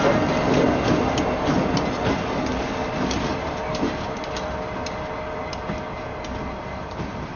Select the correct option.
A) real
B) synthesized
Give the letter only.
A